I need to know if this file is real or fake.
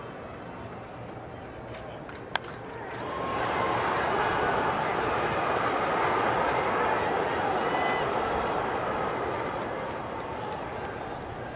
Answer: real